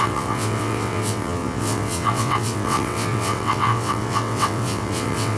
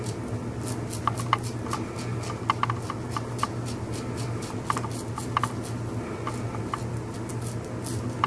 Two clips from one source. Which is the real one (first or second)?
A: second